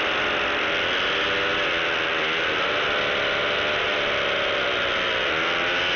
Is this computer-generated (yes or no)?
no